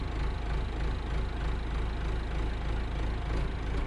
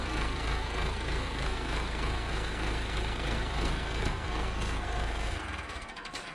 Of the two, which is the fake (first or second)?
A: second